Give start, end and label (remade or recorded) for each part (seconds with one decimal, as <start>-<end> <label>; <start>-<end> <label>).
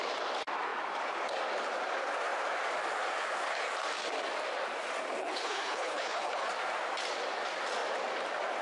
0.0-5.2 recorded; 5.2-6.5 remade; 6.5-8.6 recorded